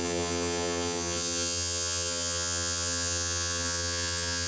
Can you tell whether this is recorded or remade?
remade